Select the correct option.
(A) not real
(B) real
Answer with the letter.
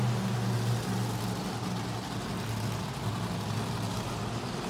B